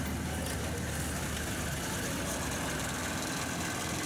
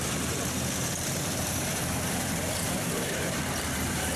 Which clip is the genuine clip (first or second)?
first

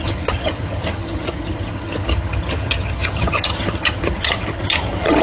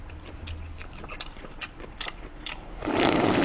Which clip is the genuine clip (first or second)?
second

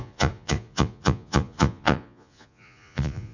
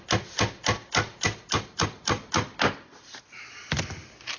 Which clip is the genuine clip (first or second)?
second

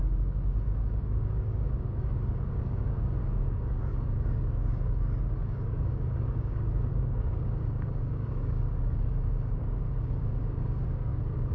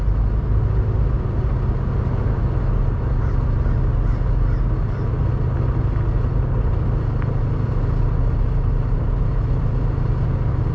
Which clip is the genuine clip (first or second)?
second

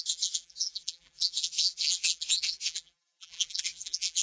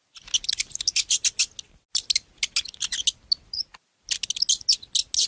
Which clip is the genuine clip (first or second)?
second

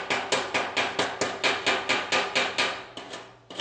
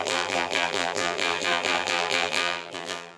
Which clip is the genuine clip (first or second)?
first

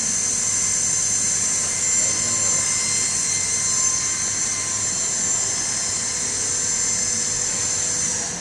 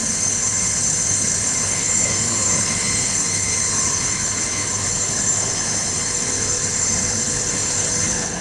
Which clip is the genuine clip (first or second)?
first